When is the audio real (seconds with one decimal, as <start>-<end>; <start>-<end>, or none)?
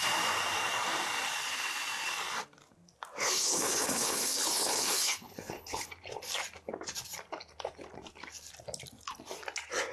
0.0-3.2; 5.9-9.9